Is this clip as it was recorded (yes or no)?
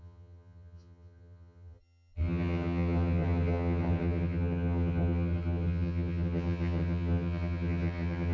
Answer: no